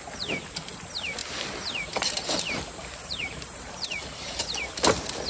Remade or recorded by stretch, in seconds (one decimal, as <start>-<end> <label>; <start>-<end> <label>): 0.0-1.2 recorded; 1.2-4.4 remade; 4.4-5.3 recorded